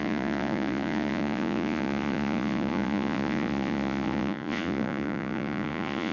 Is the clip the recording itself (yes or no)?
no